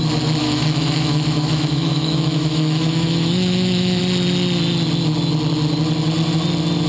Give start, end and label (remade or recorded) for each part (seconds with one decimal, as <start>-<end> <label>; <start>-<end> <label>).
0.0-0.4 recorded; 0.4-4.0 remade; 4.0-6.9 recorded